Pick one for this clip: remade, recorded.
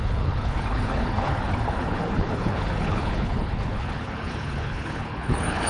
remade